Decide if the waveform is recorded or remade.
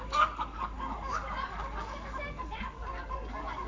remade